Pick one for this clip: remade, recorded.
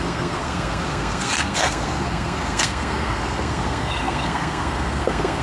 remade